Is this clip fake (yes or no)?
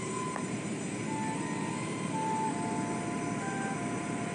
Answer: no